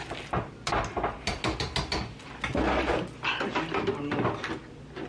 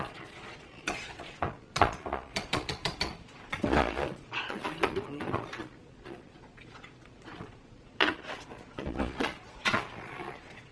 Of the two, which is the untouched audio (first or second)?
first